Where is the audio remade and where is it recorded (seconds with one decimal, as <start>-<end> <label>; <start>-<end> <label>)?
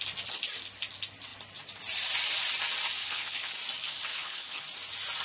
0.0-3.0 recorded; 3.0-3.5 remade; 3.5-4.1 recorded; 4.1-4.6 remade; 4.6-5.2 recorded